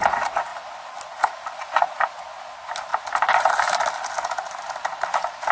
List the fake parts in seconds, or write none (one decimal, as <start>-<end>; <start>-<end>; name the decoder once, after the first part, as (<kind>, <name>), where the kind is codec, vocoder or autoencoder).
none